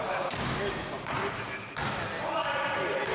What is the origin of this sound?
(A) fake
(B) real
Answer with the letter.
B